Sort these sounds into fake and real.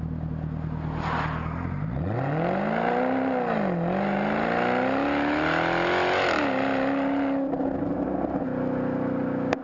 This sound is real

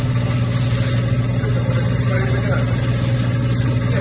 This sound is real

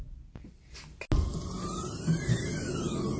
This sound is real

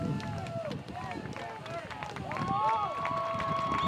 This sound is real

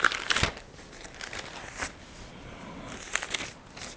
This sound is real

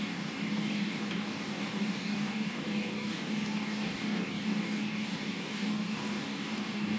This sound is fake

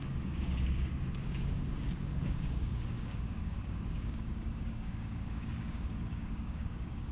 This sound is fake